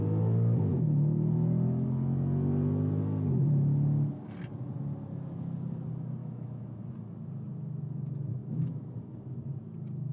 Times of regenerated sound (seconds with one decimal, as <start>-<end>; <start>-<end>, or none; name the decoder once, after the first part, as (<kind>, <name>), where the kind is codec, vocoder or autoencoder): 6.2-6.8 (autoencoder, DAC-VAE); 8.4-8.9